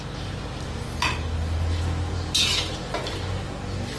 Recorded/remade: recorded